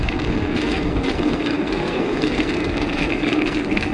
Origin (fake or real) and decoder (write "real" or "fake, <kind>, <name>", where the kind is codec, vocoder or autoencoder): fake, codec, SNAC